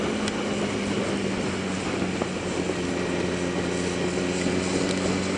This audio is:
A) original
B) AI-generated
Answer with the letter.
A